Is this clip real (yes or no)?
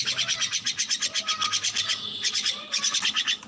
yes